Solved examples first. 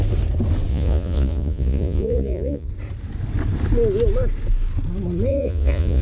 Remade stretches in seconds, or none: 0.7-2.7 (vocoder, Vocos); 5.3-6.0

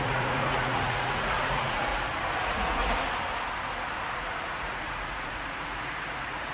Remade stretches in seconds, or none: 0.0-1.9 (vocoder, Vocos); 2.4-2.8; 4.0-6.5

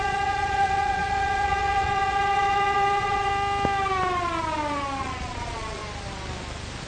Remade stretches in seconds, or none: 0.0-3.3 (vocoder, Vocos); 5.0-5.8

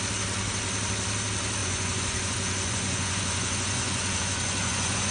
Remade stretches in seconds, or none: 1.6-5.1 (vocoder, Vocos)

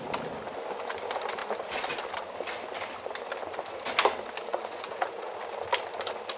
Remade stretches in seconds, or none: 4.5-5.3 (vocoder, Vocos)